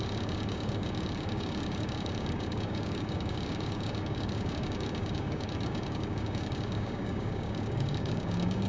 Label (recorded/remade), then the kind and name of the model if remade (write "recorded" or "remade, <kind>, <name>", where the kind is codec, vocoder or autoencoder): remade, codec, DAC